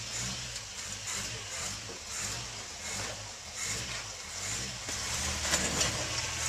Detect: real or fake real